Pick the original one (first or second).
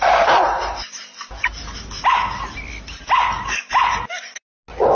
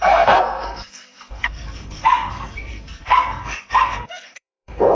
first